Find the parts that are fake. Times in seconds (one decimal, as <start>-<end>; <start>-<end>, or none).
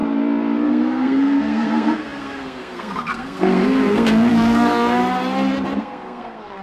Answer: 0.7-5.0; 5.8-6.6